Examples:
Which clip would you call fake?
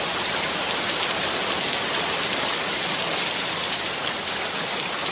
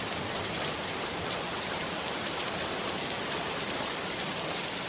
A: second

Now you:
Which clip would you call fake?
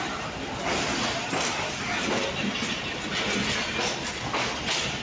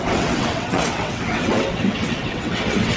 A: second